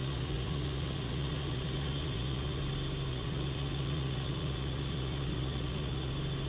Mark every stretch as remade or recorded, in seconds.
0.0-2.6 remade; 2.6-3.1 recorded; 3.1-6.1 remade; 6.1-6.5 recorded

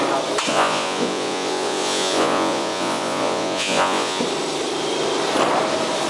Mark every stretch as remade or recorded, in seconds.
0.0-0.5 recorded; 0.5-4.2 remade; 4.2-6.1 recorded